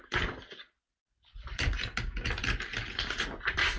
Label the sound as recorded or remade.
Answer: recorded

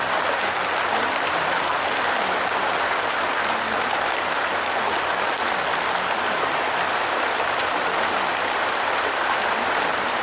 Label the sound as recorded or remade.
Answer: remade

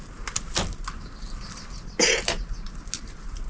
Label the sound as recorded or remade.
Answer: recorded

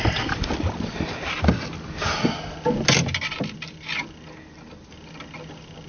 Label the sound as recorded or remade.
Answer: recorded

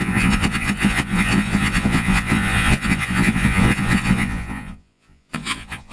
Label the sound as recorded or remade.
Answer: remade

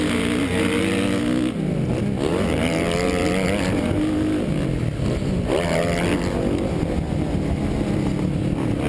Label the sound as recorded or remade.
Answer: recorded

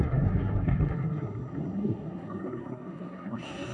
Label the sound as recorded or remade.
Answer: remade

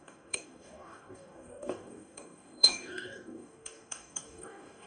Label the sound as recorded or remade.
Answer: remade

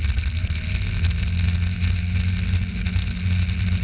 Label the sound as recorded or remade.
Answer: recorded